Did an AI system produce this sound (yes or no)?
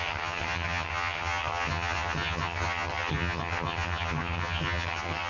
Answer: yes